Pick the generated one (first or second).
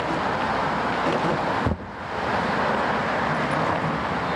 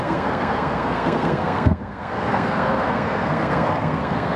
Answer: second